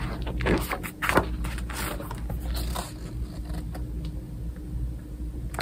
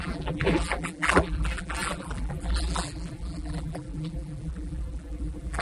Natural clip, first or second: first